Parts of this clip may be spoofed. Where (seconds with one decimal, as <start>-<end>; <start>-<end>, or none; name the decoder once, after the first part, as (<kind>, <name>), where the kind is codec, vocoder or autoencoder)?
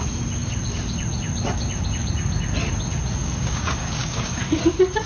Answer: 3.2-4.4 (codec, DAC)